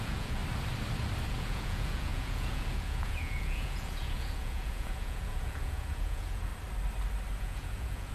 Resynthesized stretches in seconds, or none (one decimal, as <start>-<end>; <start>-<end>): 0.0-0.4; 1.3-6.5; 7.4-8.1